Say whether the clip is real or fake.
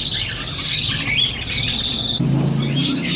real